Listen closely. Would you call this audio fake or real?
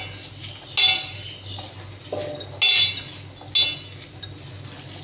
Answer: real